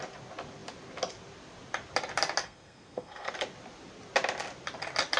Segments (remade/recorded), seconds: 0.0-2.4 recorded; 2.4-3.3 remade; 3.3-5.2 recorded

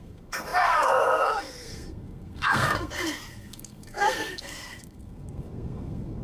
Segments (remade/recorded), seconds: 0.0-6.2 remade

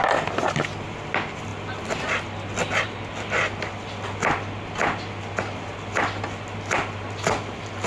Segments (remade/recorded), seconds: 0.0-7.9 recorded

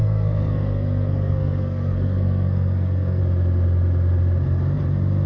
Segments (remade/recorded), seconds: 0.0-3.2 remade; 3.2-5.3 recorded

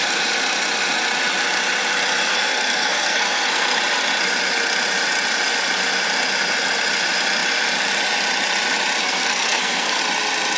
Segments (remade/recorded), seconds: 0.0-2.3 recorded; 2.3-3.8 remade; 3.8-9.0 recorded; 9.0-10.0 remade; 10.0-10.6 recorded

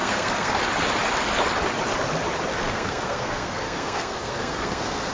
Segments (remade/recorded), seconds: 0.0-0.6 remade; 0.6-2.5 recorded; 2.5-5.1 remade